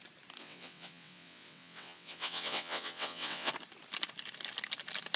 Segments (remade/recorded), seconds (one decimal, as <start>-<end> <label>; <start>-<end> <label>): 0.0-0.4 recorded; 0.4-3.5 remade; 3.5-5.2 recorded